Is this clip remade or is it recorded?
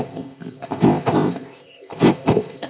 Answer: remade